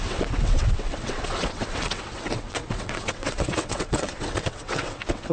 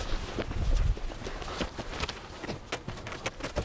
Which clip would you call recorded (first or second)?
second